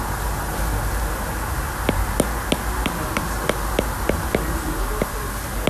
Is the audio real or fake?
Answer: real